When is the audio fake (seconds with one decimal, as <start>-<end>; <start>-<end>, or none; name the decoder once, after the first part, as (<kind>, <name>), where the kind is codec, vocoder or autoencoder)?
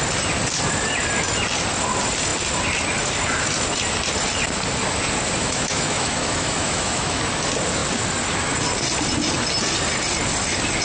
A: 5.4-7.2 (autoencoder, DAC-VAE)